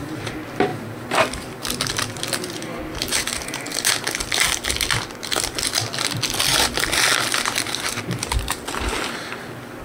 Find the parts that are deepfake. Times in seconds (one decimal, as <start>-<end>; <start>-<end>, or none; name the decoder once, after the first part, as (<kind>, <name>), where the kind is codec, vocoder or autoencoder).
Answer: 0.7-1.8 (vocoder, BigVGAN v2)